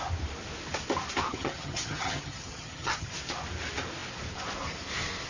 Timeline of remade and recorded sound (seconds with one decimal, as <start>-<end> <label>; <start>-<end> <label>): 0.0-1.3 recorded; 1.3-3.1 remade; 3.1-5.3 recorded